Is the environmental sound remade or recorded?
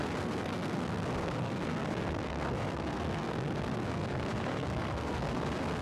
remade